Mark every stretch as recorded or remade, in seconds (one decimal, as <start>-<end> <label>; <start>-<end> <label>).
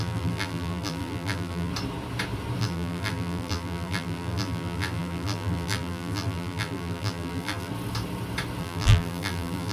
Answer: 0.0-1.7 remade; 1.7-2.6 recorded; 2.6-7.7 remade; 7.7-8.6 recorded; 8.6-9.7 remade